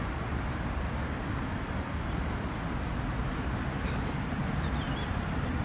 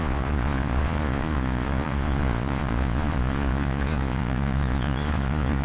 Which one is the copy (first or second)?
second